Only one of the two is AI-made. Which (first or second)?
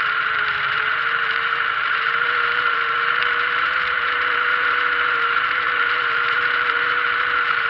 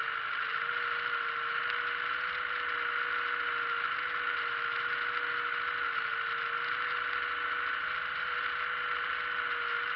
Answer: first